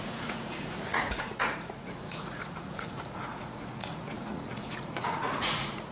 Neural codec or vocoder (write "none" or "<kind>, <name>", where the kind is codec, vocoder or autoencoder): vocoder, Vocos